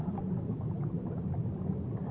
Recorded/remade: recorded